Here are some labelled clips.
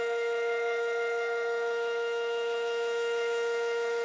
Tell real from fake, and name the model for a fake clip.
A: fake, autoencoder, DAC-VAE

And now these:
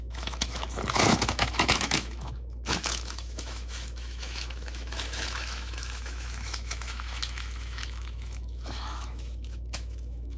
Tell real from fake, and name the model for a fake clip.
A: fake, autoencoder, DAC-VAE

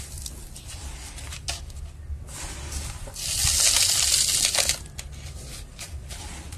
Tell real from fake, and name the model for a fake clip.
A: real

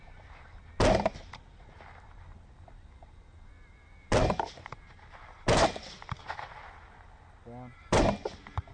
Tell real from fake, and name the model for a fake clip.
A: real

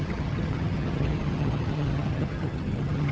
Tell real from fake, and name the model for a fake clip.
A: fake, vocoder, HiFi-GAN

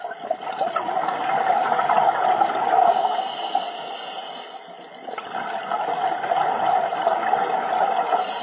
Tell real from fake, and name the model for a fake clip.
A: real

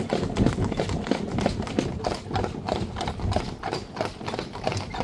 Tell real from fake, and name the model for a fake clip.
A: real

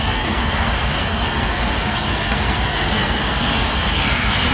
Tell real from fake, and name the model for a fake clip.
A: fake, codec, SNAC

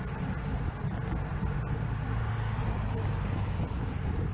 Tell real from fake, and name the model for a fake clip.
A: real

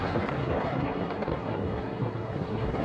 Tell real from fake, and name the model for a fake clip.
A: fake, codec, SNAC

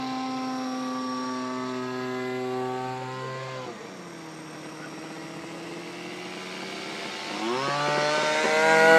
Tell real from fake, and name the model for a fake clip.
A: real